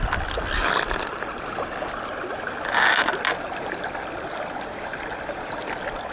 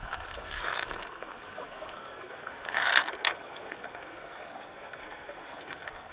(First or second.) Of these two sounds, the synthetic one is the second